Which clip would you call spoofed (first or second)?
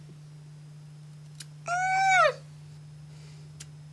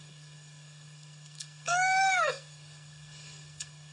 second